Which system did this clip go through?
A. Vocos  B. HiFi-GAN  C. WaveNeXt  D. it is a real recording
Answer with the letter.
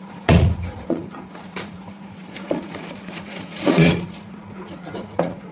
A